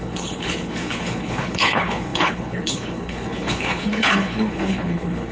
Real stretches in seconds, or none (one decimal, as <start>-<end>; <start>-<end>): none